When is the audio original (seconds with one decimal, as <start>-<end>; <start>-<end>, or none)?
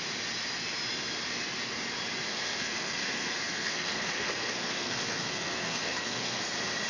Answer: 0.0-2.3; 6.4-6.9